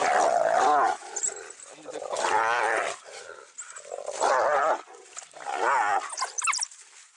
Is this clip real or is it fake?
real